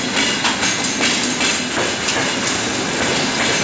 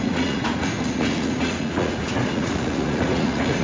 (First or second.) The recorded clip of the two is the first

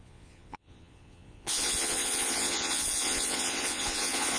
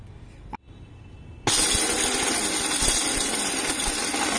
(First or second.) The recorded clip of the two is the second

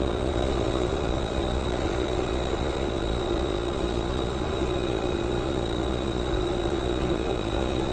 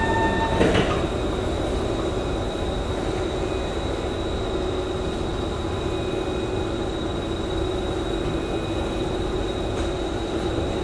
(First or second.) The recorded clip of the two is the second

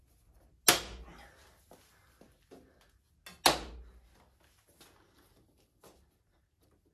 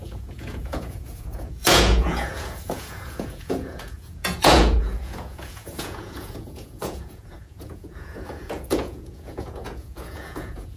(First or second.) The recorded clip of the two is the first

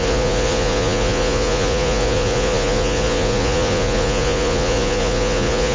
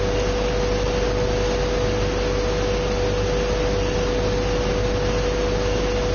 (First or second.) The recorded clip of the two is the second